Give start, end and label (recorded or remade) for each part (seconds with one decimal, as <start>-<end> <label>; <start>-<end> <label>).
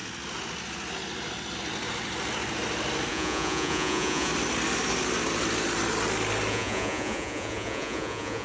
0.0-3.1 recorded; 3.1-4.3 remade; 4.3-6.5 recorded; 6.5-8.4 remade